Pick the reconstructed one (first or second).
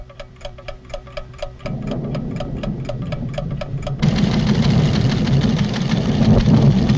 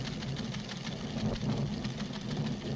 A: first